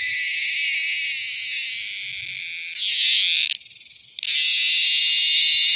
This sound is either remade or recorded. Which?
recorded